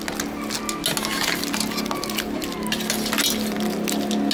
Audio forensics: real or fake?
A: real